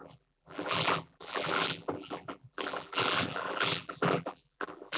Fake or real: fake